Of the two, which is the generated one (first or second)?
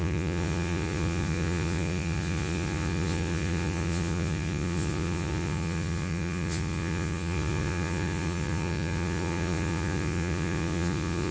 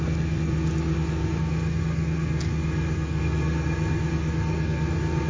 first